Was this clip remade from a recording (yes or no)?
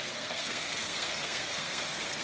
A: yes